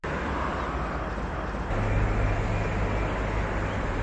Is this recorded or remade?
recorded